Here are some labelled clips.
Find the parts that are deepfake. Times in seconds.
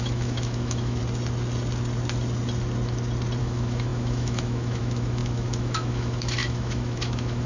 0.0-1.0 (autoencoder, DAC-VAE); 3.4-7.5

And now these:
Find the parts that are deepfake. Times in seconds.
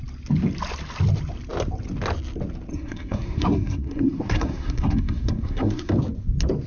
2.7-5.9 (codec, SNAC)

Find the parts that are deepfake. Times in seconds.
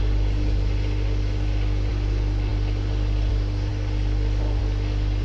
none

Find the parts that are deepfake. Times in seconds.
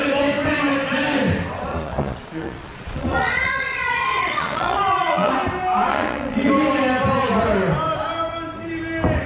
1.7-5.3 (vocoder, Vocos); 5.9-6.5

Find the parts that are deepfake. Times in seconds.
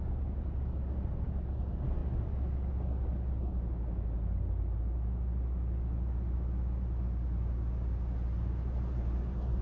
none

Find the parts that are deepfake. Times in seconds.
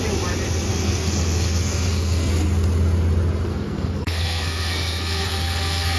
0.7-2.3 (codec, SNAC); 3.5-6.0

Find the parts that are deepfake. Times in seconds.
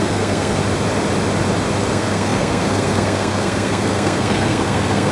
0.0-0.6 (codec, SNAC); 1.8-5.1